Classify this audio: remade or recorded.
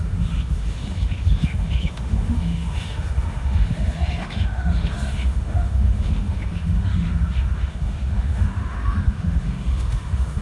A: remade